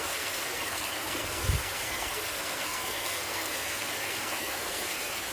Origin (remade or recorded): remade